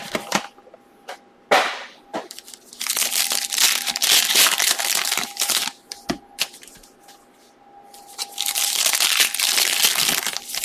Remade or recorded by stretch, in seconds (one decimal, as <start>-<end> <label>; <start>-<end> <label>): 0.0-2.1 recorded; 2.1-2.7 remade; 2.7-10.6 recorded